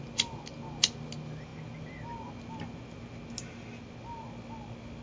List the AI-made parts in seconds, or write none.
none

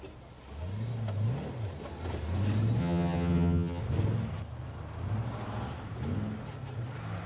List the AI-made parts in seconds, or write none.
2.8-3.8 (vocoder, HiFi-GAN)

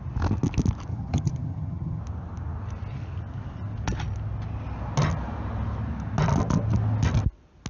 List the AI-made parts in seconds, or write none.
0.9-2.0 (vocoder, HiFi-GAN)

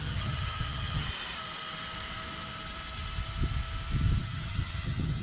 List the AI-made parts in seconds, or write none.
0.0-1.1 (vocoder, HiFi-GAN); 4.2-5.2

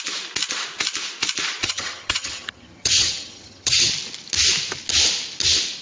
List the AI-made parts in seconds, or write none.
1.6-3.9 (vocoder, HiFi-GAN)

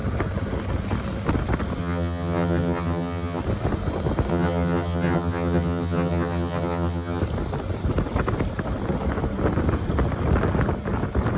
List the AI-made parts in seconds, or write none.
1.8-3.4 (vocoder, HiFi-GAN); 4.3-7.2